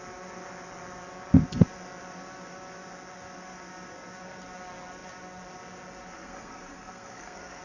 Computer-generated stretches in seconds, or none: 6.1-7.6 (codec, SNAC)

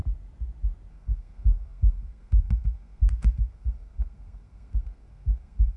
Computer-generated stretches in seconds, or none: 0.9-5.8 (codec, SNAC)